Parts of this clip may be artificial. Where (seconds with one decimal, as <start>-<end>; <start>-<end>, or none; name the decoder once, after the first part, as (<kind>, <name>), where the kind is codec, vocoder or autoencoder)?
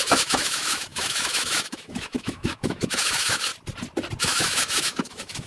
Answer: 0.0-3.5 (autoencoder, DAC-VAE); 4.2-5.5